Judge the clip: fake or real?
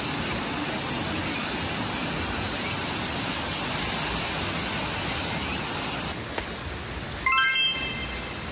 real